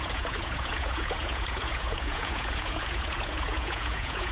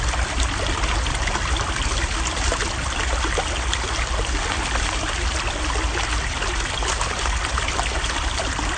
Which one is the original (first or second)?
second